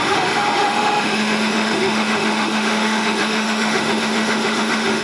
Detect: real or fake fake